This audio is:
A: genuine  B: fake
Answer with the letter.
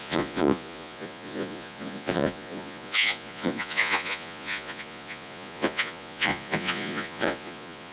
B